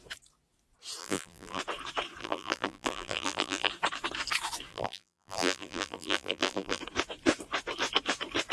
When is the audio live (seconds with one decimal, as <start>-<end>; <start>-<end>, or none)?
0.0-1.0; 1.6-2.2; 3.7-4.7; 6.8-8.5